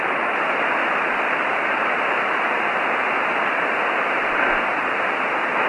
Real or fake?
real